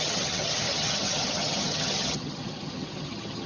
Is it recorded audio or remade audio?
remade